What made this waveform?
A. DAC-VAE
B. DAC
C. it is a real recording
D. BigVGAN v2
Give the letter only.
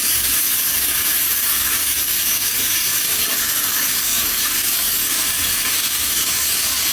B